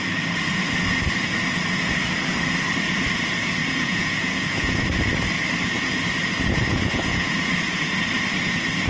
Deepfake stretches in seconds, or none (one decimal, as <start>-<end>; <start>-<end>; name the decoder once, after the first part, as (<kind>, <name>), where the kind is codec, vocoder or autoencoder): 3.6-4.8 (vocoder, Vocos); 6.7-7.5